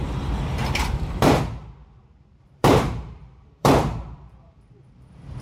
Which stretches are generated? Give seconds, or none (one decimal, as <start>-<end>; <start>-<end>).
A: 0.6-1.4; 1.8-5.0